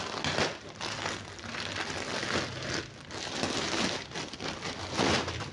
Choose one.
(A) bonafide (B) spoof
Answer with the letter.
A